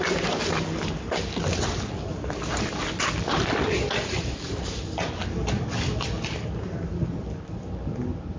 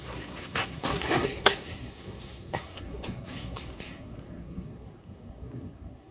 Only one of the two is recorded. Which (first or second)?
first